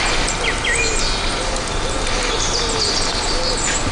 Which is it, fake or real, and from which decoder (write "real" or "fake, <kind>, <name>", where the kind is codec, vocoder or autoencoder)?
real